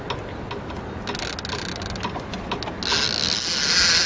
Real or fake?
real